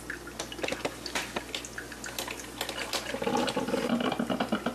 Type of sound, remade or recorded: recorded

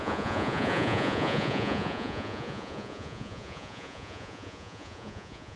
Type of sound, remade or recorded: remade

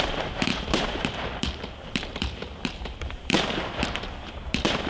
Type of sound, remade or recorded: remade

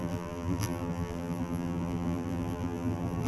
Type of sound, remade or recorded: remade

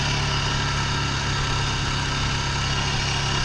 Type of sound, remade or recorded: recorded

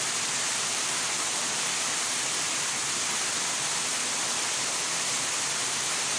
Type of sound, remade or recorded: recorded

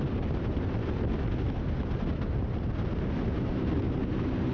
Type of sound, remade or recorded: recorded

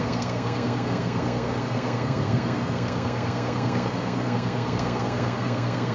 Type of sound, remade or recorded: remade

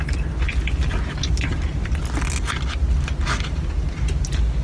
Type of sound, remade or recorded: recorded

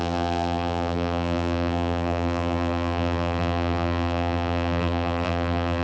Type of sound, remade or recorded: remade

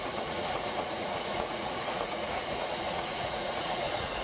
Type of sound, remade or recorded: remade